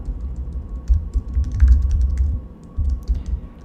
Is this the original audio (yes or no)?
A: no